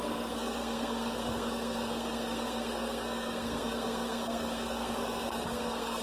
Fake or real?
fake